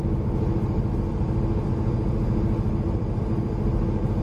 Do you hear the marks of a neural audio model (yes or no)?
no